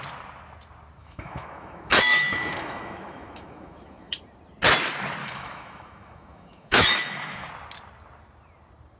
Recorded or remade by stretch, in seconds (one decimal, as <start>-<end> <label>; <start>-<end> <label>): 0.0-1.0 recorded; 1.0-4.1 remade; 4.1-5.2 recorded; 5.2-7.5 remade; 7.5-9.0 recorded